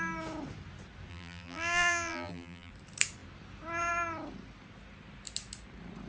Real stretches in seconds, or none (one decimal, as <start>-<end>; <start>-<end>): 0.0-1.1; 2.7-6.1